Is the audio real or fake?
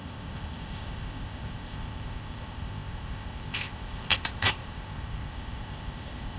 fake